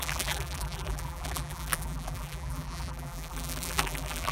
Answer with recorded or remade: remade